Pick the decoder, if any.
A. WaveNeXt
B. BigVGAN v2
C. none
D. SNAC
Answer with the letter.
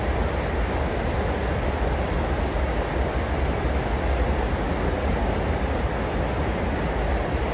C